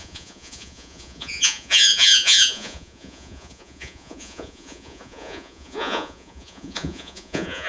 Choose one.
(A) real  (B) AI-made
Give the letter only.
B